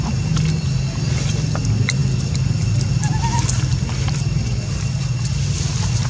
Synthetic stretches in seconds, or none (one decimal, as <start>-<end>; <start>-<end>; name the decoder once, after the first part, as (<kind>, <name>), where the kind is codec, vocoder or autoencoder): none